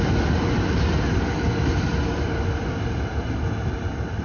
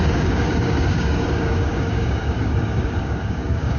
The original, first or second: first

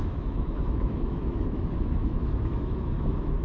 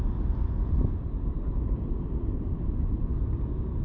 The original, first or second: second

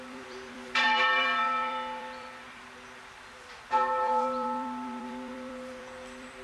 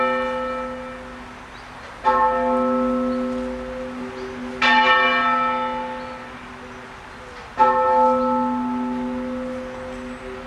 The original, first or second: second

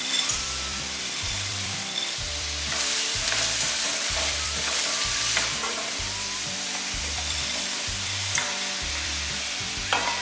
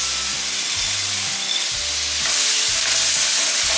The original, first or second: second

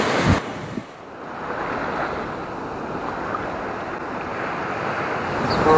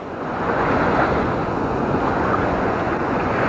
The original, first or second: first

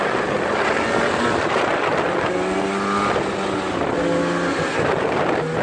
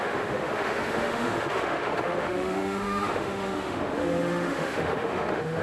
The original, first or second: first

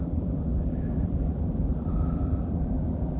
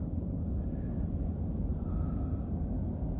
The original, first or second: second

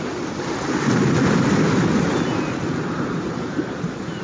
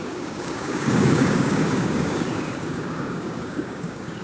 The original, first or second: first